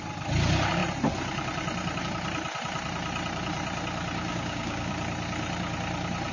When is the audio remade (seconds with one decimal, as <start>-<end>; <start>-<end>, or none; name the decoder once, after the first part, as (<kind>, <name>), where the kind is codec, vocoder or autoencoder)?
4.3-4.9 (codec, DAC)